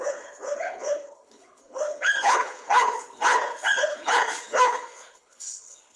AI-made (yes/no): yes